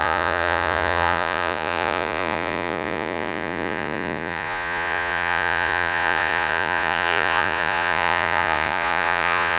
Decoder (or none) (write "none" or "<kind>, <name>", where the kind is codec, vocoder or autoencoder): vocoder, Vocos